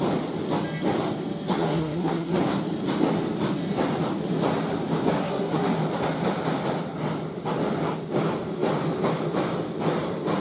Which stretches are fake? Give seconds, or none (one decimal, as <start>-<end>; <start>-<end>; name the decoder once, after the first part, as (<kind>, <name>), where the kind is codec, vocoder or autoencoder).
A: 1.5-2.4 (codec, SNAC); 5.2-5.7